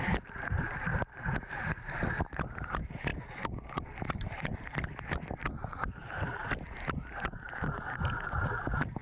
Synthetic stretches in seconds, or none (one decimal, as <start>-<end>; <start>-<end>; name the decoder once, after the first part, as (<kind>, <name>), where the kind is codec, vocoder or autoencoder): none

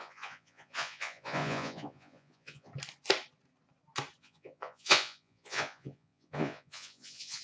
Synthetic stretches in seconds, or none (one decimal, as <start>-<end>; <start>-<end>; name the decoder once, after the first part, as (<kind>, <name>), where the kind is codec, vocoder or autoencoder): 0.0-2.7 (vocoder, Vocos); 4.2-7.4

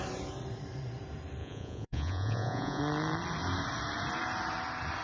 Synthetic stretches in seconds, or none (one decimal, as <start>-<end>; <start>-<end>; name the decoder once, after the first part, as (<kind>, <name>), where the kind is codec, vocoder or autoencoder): 1.4-2.8 (vocoder, Vocos)

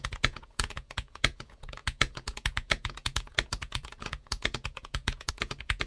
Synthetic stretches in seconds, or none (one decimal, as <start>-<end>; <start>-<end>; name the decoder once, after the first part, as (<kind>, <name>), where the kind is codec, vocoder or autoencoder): 0.0-5.9 (vocoder, Vocos)